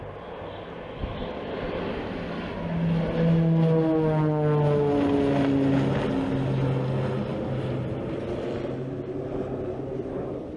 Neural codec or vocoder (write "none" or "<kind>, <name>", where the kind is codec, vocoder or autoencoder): none